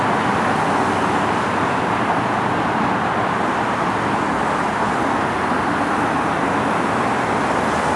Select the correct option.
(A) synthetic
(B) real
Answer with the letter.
B